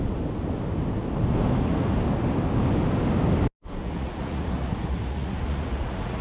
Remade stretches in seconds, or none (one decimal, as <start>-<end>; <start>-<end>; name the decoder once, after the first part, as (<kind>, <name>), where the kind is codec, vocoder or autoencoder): 3.8-6.2 (vocoder, Vocos)